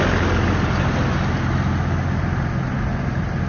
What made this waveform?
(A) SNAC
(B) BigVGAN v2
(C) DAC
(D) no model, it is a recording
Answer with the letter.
D